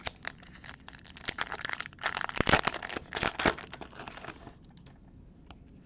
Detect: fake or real real